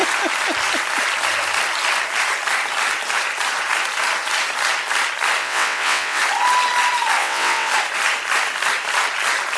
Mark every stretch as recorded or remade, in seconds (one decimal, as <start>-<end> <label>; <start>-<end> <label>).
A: 0.0-5.4 recorded; 5.4-6.2 remade; 6.2-7.2 recorded; 7.2-7.7 remade; 7.7-9.6 recorded